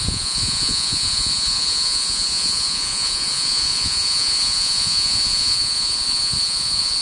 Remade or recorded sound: remade